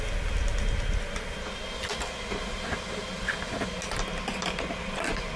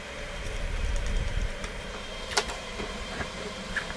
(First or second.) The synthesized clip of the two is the second